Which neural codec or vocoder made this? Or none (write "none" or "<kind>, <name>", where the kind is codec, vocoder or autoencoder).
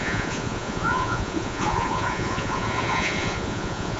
vocoder, Vocos